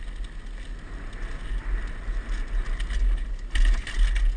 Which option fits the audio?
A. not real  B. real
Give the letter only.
B